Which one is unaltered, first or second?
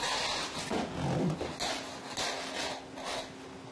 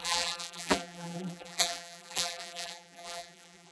first